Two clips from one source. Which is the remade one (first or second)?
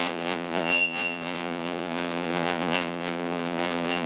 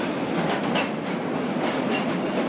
first